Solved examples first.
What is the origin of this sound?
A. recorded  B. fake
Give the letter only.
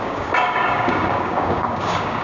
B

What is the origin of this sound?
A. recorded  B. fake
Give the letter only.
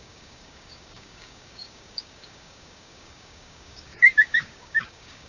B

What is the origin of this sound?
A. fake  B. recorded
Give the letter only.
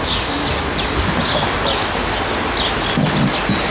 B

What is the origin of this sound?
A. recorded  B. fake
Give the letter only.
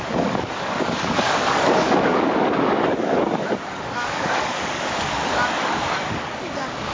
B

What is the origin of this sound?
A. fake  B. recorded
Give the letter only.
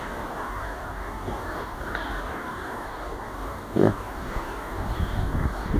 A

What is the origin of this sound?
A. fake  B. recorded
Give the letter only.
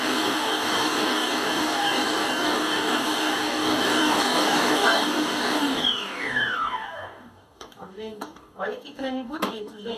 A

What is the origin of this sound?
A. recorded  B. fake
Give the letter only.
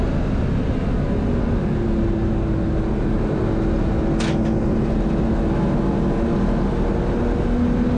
A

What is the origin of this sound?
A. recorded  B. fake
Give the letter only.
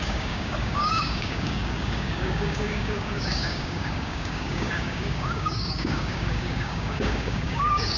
B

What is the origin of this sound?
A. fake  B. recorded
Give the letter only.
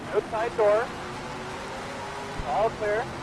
B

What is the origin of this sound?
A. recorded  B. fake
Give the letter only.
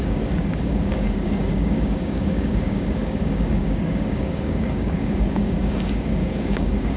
B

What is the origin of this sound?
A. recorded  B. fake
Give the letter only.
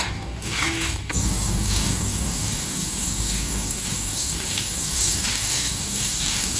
B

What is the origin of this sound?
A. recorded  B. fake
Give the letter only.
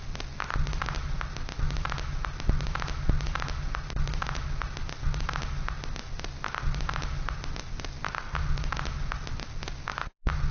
A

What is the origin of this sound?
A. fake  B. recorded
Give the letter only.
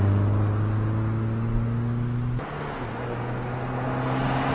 B